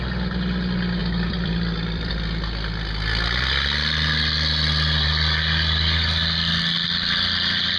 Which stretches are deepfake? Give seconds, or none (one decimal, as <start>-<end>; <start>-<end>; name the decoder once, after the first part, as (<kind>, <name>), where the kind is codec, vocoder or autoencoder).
1.0-2.1 (vocoder, BigVGAN v2)